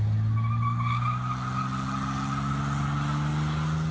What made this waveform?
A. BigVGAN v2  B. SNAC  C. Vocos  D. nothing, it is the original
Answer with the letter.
D